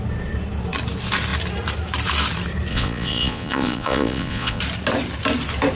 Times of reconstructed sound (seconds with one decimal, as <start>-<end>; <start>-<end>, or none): 2.7-4.6